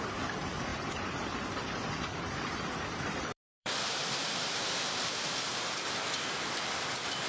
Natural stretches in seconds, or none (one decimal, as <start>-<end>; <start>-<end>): 0.0-0.7; 5.1-5.5; 6.1-7.3